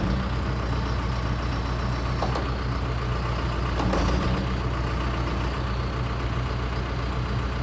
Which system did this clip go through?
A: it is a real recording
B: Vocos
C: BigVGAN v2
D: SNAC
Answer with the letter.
A